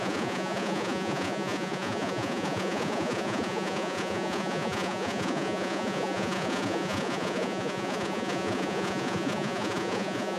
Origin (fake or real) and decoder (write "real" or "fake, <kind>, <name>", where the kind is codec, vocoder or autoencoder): fake, vocoder, Vocos